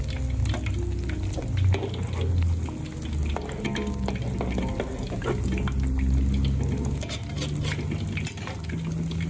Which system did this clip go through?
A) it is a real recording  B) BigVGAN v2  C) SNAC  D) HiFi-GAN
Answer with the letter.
A